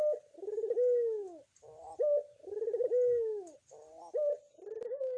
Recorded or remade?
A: recorded